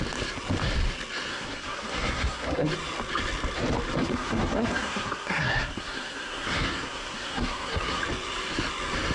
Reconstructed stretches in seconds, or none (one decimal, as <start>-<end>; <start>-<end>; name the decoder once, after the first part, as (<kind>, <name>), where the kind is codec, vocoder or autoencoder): 1.3-2.7 (codec, SNAC); 4.0-8.0